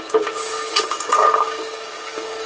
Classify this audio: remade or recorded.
remade